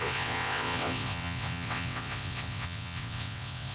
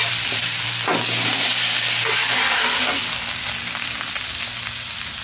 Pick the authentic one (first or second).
second